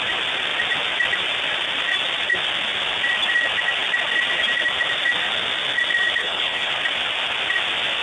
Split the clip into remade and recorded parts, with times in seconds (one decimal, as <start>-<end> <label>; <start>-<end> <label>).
0.0-6.2 recorded; 6.2-6.7 remade; 6.7-8.0 recorded